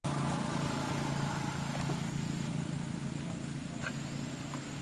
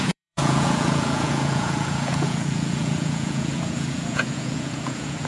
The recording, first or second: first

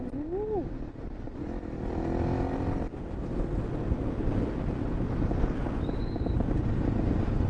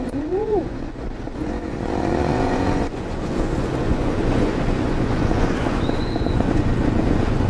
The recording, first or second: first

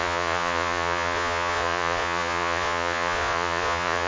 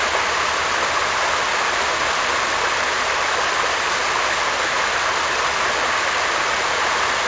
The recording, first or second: second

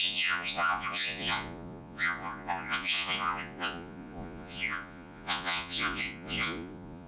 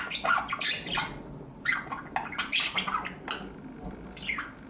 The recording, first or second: second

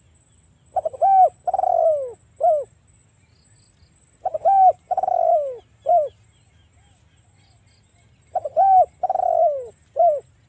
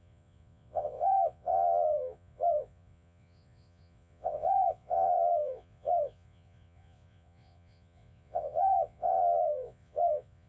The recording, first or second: first